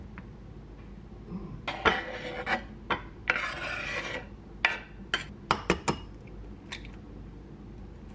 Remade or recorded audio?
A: recorded